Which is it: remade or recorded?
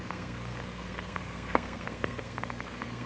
remade